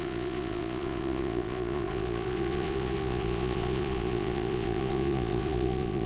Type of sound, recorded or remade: remade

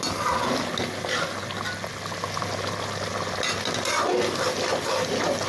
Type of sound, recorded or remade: recorded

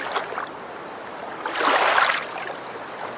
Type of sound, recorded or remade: recorded